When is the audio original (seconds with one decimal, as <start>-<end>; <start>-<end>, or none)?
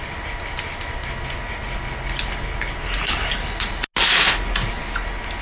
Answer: 0.0-5.4